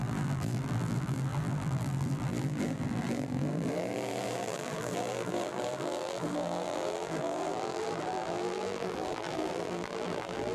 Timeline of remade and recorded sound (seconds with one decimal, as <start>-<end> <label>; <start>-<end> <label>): 0.0-10.5 remade